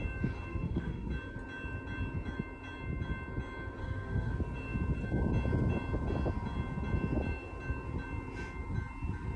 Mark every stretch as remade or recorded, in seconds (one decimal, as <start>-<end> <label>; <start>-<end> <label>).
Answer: 0.0-0.5 recorded; 0.5-1.1 remade; 1.1-3.8 recorded; 3.8-4.3 remade; 4.3-9.4 recorded